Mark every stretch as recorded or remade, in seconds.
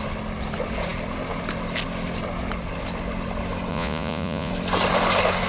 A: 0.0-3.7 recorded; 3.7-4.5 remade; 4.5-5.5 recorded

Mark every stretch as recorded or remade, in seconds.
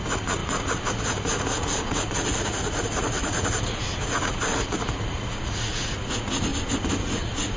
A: 0.0-6.5 remade; 6.5-7.0 recorded; 7.0-7.6 remade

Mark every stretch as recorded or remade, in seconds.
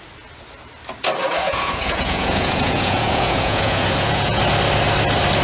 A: 0.0-1.2 recorded; 1.2-4.4 remade; 4.4-5.4 recorded